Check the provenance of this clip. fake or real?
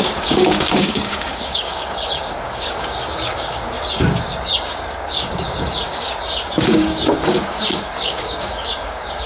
fake